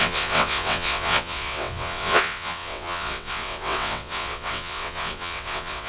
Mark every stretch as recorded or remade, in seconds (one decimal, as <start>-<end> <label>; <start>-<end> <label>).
0.0-5.9 remade